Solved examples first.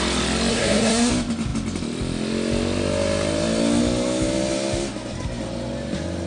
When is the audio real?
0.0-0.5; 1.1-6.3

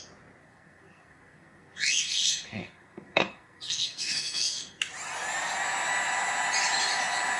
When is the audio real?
0.0-0.4; 4.8-7.4

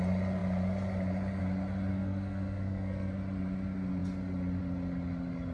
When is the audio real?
0.0-1.9; 3.1-5.5